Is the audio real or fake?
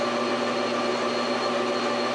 real